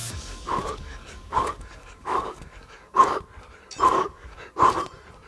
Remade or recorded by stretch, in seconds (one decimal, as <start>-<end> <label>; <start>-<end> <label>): 0.0-3.2 remade; 3.2-3.9 recorded; 3.9-4.5 remade; 4.5-5.3 recorded